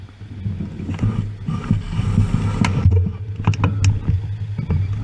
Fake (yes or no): no